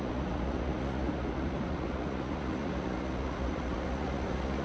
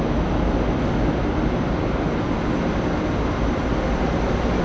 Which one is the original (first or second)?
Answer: second